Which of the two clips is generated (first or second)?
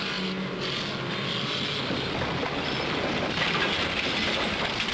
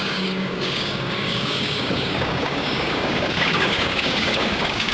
second